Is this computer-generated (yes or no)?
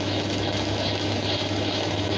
yes